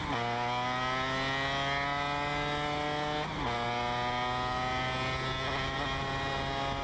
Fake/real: real